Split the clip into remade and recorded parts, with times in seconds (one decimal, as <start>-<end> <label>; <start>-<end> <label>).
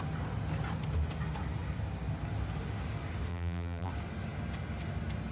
0.0-3.3 recorded; 3.3-3.9 remade; 3.9-5.3 recorded